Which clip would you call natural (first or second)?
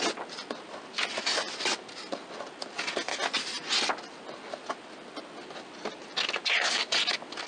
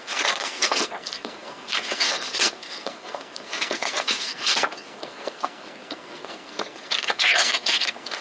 first